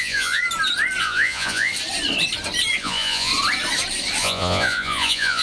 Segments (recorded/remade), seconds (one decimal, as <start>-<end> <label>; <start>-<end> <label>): 0.0-0.4 remade; 0.4-1.0 recorded; 1.0-1.7 remade; 1.7-2.8 recorded; 2.8-3.3 remade; 3.3-4.2 recorded; 4.2-5.4 remade